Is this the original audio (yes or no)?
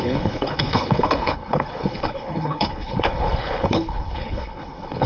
no